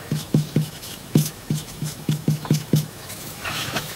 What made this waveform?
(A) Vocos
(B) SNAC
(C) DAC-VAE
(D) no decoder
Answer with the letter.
C